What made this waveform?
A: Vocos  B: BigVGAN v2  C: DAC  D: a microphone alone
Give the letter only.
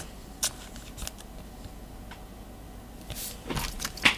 D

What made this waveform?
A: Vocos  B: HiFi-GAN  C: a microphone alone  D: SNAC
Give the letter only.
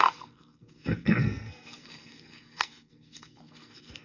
D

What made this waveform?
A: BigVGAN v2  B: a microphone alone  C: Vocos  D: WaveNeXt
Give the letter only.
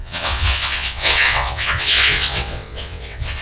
D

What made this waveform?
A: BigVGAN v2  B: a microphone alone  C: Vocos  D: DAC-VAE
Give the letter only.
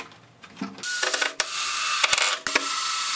B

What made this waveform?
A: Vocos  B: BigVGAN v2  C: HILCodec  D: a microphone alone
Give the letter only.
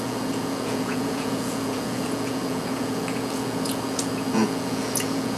A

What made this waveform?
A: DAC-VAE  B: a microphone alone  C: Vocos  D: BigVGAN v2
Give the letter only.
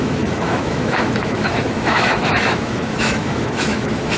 A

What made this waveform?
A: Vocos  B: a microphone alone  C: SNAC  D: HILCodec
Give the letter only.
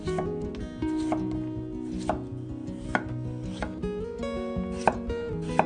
B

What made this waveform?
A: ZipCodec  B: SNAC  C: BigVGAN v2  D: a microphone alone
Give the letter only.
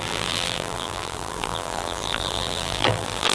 C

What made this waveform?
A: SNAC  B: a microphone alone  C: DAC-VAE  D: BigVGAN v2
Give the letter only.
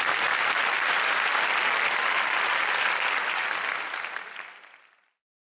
B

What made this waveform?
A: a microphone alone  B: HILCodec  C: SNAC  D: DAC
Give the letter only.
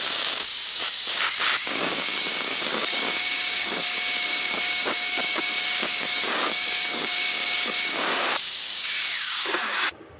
D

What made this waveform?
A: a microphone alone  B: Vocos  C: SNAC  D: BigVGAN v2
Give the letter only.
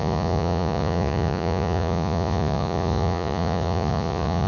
B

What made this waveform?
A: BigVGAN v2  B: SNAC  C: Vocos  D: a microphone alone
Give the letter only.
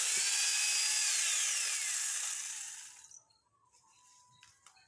D